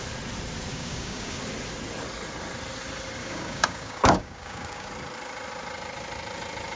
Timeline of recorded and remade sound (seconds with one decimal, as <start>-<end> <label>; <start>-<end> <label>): 0.0-0.7 recorded; 0.7-1.4 remade; 1.4-3.2 recorded; 3.2-4.9 remade; 4.9-6.8 recorded

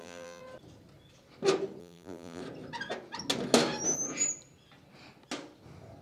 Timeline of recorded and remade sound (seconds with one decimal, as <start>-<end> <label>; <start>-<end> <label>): 0.0-0.4 remade; 0.4-1.8 recorded; 1.8-2.4 remade; 2.4-6.0 recorded

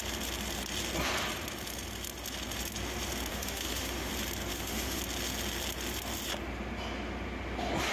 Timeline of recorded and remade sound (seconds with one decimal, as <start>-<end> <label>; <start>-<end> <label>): 0.0-3.3 recorded; 3.3-4.1 remade; 4.1-4.5 recorded; 4.5-5.0 remade; 5.0-7.9 recorded